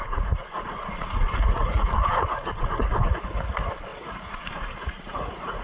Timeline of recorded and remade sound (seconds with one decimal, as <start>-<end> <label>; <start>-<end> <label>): 0.0-5.6 remade